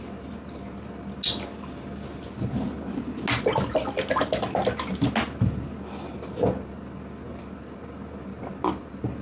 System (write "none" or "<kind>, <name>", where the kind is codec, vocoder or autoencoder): none